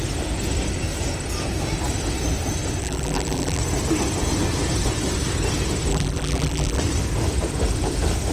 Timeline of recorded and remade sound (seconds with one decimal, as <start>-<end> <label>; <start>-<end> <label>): 0.0-2.8 recorded; 2.8-3.6 remade; 3.6-5.9 recorded; 5.9-6.8 remade; 6.8-8.3 recorded